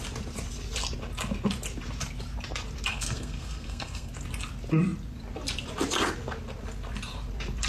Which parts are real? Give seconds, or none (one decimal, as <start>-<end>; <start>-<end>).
0.0-2.9; 4.1-7.7